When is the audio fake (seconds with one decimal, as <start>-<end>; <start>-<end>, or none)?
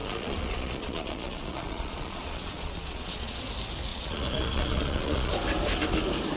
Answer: 0.0-3.4; 3.9-5.3